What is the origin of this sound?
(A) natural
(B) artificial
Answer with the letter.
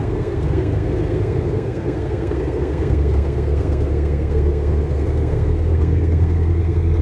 B